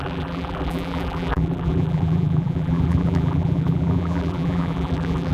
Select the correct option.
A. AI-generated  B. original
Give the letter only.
A